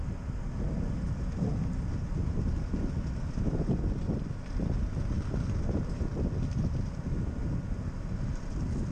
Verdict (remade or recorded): recorded